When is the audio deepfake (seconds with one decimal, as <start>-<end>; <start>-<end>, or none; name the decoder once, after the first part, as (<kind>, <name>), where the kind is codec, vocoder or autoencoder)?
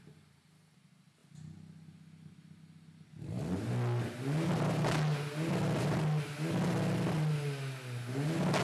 none